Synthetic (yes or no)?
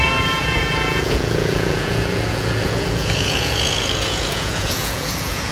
yes